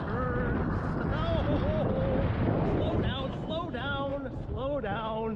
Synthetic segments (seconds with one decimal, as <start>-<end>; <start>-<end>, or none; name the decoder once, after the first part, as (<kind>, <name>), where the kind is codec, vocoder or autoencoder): none

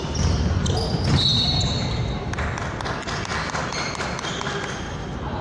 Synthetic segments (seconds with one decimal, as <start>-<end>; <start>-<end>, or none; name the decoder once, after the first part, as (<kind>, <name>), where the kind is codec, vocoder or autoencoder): none

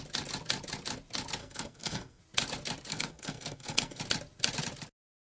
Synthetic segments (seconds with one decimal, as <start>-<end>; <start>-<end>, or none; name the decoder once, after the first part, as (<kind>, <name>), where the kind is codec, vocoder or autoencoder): 1.4-2.2 (codec, SNAC); 2.9-4.0

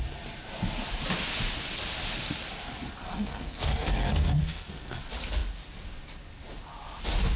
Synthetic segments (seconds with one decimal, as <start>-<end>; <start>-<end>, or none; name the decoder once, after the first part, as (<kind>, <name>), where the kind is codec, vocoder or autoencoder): 3.0-5.0 (codec, SNAC)

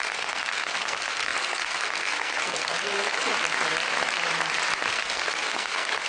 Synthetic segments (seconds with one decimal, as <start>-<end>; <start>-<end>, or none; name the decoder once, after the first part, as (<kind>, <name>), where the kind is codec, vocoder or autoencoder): 0.0-3.3 (codec, SNAC); 4.9-6.1

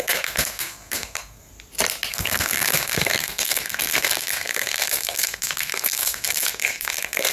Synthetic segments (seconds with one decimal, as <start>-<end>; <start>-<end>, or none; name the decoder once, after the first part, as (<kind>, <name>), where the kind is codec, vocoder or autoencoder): 0.0-1.5 (codec, SNAC); 2.1-7.3

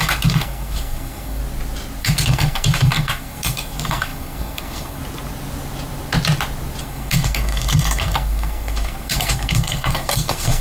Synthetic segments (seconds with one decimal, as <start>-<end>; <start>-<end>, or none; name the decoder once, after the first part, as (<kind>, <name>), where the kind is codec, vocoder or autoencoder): 0.0-1.4 (codec, SNAC); 2.0-5.0; 6.8-10.6

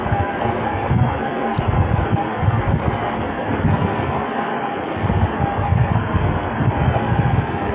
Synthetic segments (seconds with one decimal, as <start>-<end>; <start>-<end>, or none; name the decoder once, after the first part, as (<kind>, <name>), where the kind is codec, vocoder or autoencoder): 0.0-7.7 (codec, SNAC)